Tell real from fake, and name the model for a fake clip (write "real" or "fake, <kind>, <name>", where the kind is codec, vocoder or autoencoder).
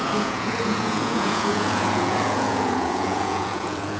fake, vocoder, Vocos